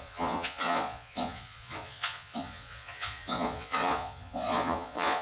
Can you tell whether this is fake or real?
fake